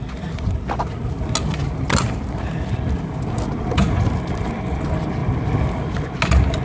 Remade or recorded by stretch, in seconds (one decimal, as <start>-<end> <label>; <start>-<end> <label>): 0.0-6.6 recorded